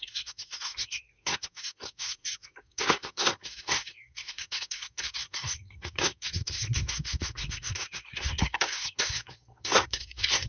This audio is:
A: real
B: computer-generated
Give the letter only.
B